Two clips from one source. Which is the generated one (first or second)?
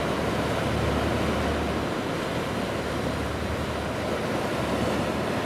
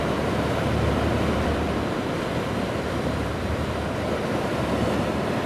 second